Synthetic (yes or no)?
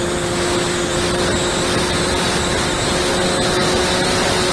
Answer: no